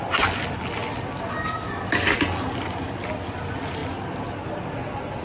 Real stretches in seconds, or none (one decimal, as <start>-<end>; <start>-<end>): 0.0-5.2